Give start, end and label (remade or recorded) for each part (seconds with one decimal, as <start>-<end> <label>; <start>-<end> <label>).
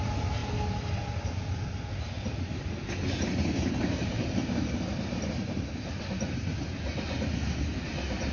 0.0-8.3 recorded